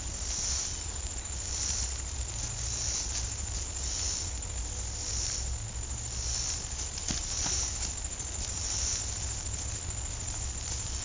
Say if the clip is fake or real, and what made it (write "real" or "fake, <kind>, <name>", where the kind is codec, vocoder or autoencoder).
real